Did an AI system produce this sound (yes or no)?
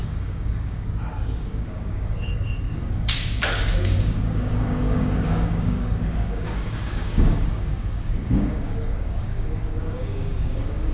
yes